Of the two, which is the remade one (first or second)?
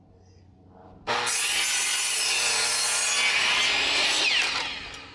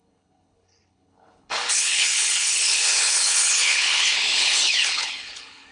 second